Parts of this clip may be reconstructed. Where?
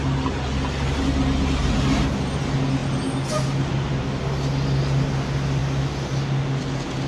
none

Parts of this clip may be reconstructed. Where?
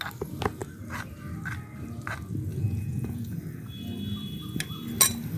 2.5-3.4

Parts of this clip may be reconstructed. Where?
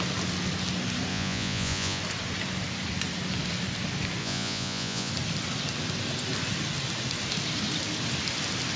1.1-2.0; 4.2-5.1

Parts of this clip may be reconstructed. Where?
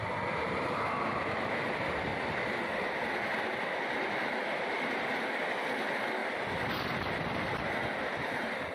2.1-2.6; 4.0-5.2; 6.2-7.2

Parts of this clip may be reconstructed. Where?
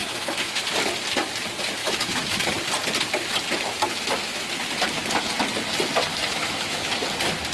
0.0-0.6; 1.8-2.5; 6.1-6.9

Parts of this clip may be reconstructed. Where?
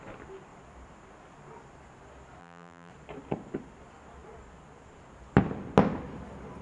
2.4-2.9